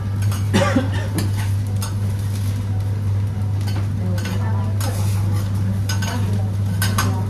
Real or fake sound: real